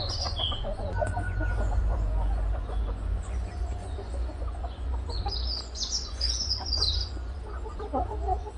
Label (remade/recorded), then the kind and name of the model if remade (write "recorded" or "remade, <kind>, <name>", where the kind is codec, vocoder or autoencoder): remade, vocoder, Vocos